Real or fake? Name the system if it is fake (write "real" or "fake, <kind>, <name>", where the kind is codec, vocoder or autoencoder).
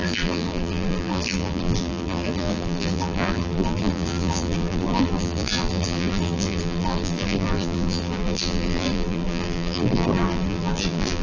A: fake, vocoder, BigVGAN v2